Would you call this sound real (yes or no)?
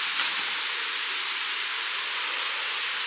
yes